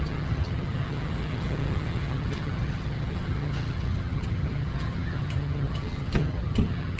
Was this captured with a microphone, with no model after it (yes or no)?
no